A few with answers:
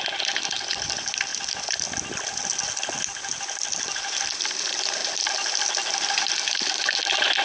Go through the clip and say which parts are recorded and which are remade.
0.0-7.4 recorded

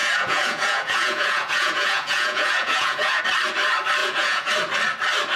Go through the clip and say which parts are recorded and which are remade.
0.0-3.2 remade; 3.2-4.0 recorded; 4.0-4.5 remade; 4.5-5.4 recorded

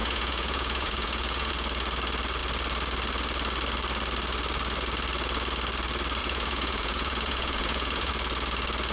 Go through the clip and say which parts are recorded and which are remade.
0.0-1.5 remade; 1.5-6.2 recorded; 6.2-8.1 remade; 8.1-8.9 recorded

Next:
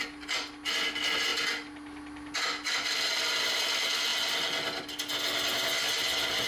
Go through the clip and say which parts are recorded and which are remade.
0.0-6.5 recorded